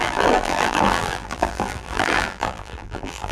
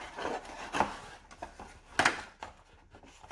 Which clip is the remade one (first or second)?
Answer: first